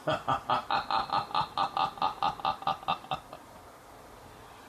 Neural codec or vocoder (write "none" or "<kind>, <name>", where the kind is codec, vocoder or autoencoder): none